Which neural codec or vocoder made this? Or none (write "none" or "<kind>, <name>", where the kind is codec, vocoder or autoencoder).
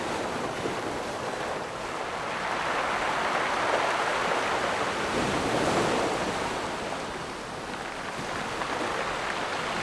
none